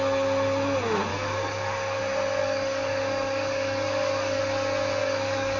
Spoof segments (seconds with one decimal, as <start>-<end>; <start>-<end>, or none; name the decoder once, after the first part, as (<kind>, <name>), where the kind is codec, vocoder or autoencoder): 1.1-2.0 (codec, DAC); 2.4-4.4; 5.0-5.6